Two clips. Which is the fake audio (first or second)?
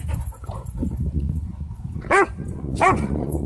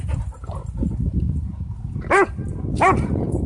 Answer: first